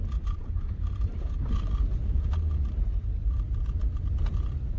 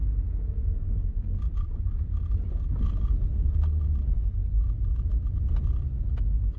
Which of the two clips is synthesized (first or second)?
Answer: first